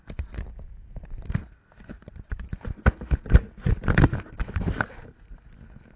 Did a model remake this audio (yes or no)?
yes